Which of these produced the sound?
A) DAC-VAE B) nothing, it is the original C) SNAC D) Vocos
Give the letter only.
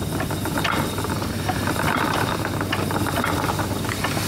B